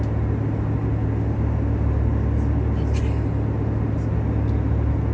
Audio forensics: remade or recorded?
recorded